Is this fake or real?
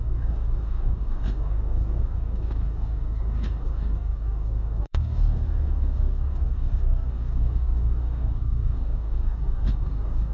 fake